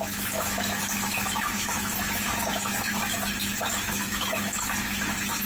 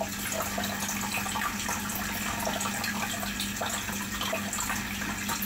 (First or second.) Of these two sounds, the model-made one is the first